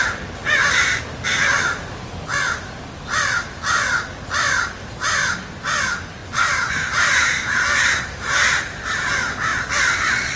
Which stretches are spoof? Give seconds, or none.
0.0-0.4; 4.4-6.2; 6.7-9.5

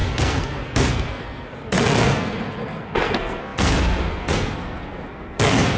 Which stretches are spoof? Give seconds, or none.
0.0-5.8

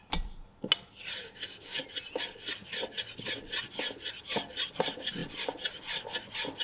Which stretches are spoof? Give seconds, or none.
1.2-1.8

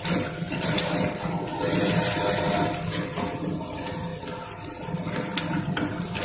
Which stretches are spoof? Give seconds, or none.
none

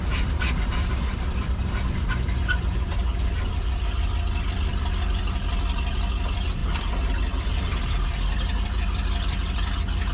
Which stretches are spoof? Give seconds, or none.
0.0-10.1

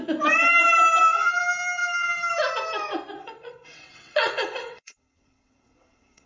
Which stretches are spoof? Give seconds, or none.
3.2-6.3

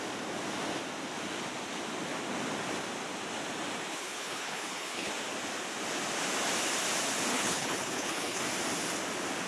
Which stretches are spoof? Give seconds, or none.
3.9-5.1; 7.3-8.4